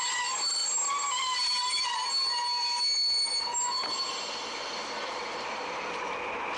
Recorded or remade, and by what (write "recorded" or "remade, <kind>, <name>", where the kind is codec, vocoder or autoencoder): recorded